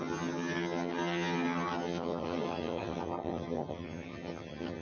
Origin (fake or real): fake